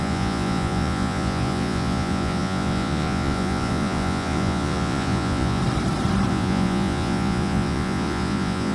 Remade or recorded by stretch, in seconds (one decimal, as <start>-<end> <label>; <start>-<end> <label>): 0.0-5.6 remade; 5.6-6.3 recorded; 6.3-8.7 remade